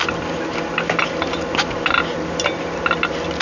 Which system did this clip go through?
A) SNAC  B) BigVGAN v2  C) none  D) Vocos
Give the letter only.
C